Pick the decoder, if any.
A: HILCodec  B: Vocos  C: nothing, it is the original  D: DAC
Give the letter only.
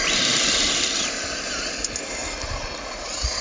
C